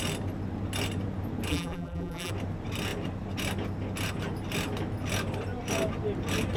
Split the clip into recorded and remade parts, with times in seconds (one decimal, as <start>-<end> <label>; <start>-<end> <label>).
0.0-1.5 recorded; 1.5-2.3 remade; 2.3-6.6 recorded